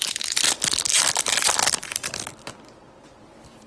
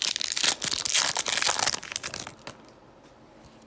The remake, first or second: first